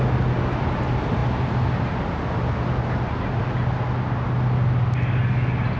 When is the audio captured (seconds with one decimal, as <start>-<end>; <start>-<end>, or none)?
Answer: 0.0-5.8